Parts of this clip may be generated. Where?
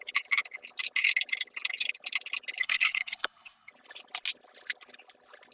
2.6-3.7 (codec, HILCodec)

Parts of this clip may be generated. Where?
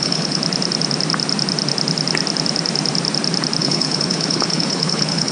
0.0-0.4 (codec, HILCodec); 3.6-5.3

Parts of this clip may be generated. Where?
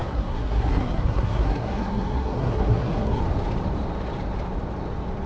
0.0-3.2 (codec, SNAC)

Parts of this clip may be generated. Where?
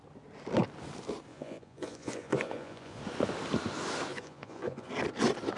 1.3-3.0 (vocoder, Vocos); 4.1-4.9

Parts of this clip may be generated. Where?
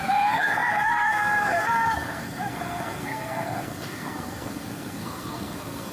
0.0-5.9 (codec, SNAC)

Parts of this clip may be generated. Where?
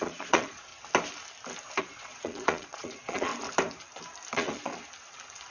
0.0-0.7 (vocoder, Vocos); 1.8-3.3; 4.3-4.7